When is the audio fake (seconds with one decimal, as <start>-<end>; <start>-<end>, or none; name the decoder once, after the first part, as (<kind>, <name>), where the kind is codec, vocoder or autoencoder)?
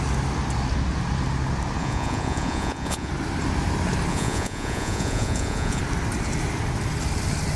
1.8-3.1 (vocoder, Vocos); 4.1-5.8